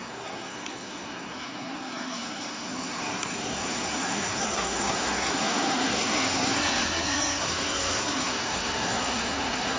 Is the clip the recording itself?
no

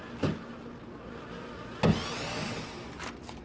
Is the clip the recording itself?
yes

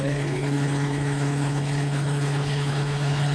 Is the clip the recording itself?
no